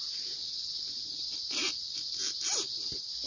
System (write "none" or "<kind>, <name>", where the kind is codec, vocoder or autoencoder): none